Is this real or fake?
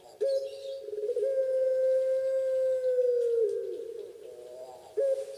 real